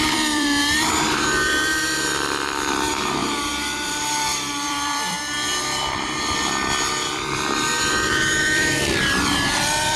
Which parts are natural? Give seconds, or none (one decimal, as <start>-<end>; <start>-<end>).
none